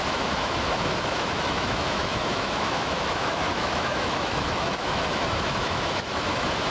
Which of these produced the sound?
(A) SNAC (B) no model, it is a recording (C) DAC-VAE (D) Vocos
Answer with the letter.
C